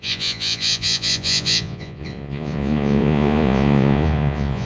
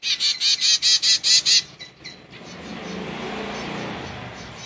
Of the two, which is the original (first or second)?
second